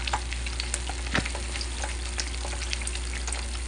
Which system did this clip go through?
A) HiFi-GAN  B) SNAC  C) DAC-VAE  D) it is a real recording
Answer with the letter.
D